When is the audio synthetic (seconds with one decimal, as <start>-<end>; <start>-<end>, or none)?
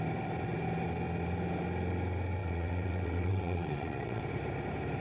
2.4-4.2